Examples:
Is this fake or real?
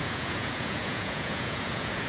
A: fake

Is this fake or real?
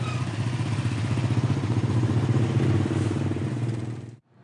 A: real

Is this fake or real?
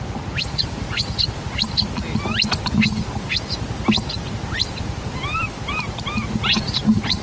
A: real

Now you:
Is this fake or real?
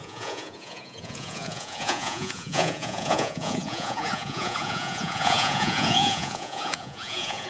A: fake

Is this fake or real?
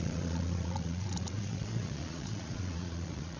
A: fake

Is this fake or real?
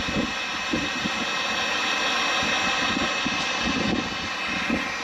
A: real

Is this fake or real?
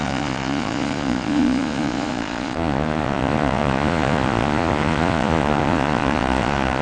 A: fake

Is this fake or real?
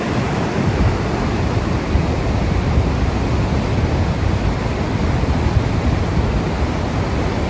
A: real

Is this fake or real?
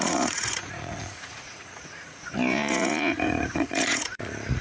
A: fake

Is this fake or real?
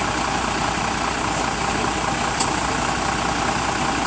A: real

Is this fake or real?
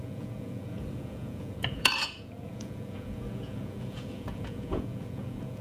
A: fake